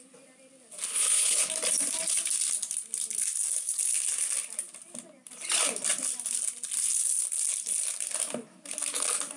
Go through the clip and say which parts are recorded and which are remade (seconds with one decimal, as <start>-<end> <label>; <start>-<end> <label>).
0.0-0.9 recorded; 0.9-1.5 remade; 1.5-9.4 recorded